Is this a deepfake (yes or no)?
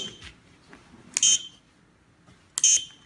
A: no